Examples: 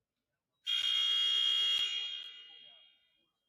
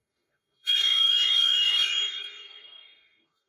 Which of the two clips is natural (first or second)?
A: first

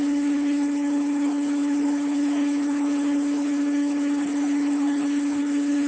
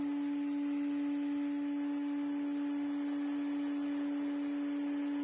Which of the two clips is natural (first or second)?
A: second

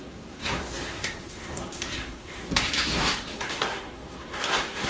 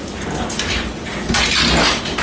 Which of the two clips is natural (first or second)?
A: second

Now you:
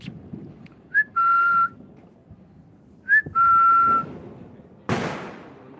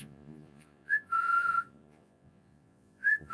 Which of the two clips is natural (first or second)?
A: first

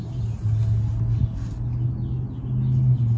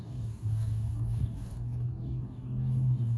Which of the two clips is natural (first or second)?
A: first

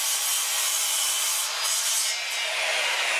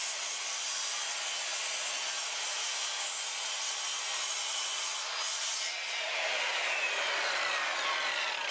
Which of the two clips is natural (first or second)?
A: first